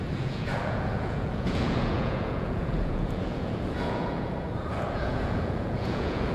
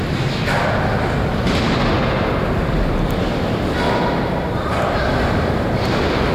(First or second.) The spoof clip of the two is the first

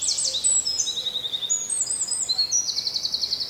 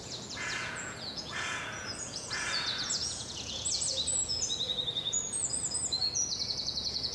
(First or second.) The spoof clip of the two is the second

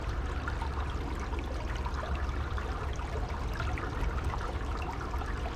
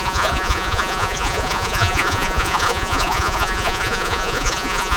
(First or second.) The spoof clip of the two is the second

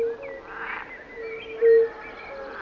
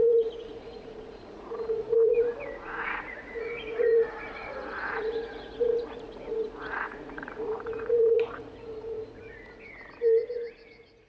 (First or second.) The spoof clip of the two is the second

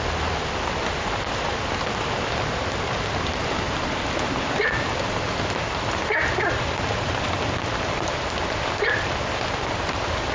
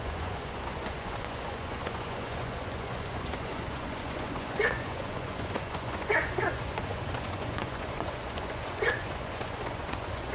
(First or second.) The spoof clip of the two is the second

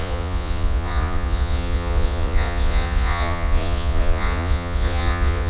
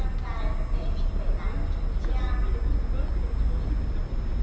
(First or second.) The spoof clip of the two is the first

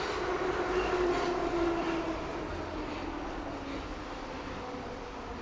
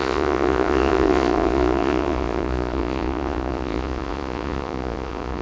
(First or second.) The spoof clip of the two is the second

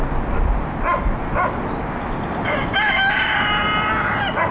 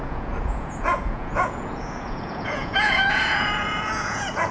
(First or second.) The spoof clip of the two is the second